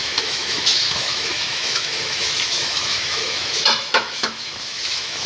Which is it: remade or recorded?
remade